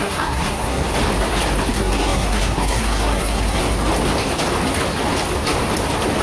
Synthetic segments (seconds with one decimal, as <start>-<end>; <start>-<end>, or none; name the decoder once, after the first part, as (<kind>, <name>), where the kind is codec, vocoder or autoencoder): 0.0-0.9 (codec, SNAC); 1.7-3.6